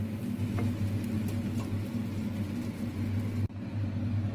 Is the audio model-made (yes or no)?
no